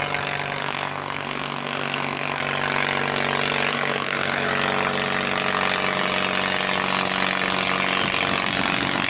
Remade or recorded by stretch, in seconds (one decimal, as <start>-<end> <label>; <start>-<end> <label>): 0.0-0.6 recorded; 0.6-2.4 remade; 2.4-3.7 recorded; 3.7-4.5 remade; 4.5-9.1 recorded